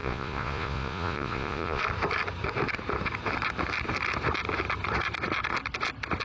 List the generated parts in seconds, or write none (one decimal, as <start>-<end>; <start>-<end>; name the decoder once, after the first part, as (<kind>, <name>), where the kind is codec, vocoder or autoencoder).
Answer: 0.0-1.8 (vocoder, Vocos)